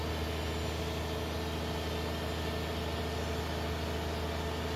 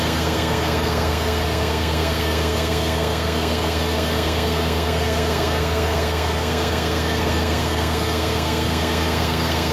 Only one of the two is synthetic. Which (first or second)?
second